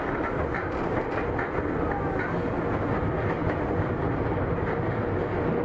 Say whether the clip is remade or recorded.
recorded